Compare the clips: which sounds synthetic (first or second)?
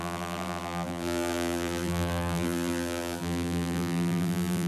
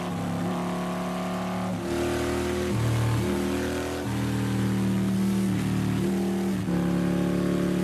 first